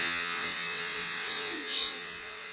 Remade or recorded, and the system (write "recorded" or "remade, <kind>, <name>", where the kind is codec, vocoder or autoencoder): remade, vocoder, WaveNeXt